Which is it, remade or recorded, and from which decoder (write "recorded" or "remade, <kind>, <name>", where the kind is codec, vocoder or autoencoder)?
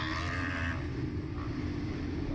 recorded